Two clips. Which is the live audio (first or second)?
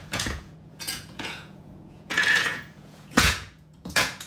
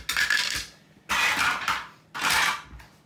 second